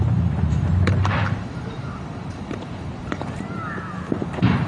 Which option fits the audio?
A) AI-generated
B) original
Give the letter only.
A